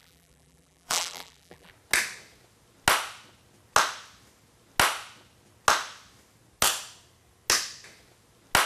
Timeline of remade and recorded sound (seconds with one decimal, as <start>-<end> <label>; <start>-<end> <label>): 0.0-1.7 remade; 1.7-8.7 recorded

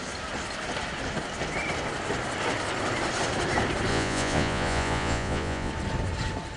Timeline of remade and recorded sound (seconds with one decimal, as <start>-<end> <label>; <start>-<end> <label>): 0.0-3.9 recorded; 3.9-5.7 remade; 5.7-6.6 recorded

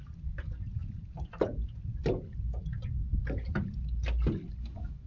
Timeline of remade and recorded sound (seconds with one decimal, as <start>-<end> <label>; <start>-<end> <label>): 0.0-5.1 recorded